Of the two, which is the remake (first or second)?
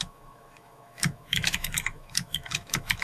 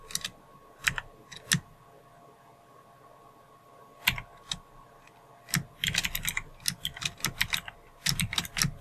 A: first